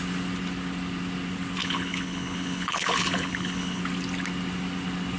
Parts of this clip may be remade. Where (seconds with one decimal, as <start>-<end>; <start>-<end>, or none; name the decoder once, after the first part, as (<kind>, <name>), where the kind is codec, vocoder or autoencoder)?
1.6-3.8 (codec, HILCodec)